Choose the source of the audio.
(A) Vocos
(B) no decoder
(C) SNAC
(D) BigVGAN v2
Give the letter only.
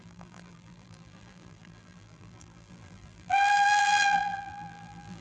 D